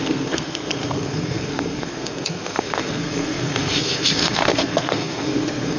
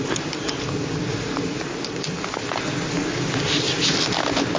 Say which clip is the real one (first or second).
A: second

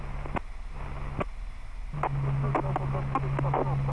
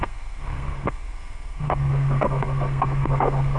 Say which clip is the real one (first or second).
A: first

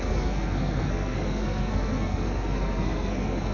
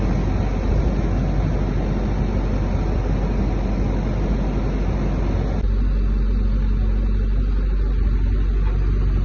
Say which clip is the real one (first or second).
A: second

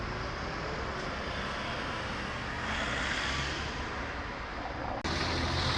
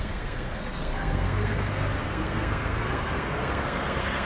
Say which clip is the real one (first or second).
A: first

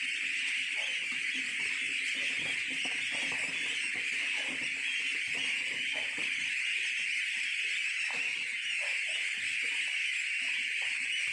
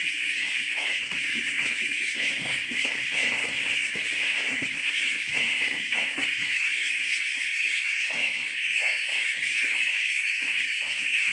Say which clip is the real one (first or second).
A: first